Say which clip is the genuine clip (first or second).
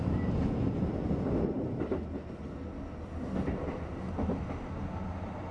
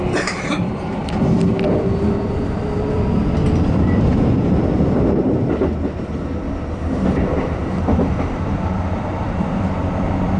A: first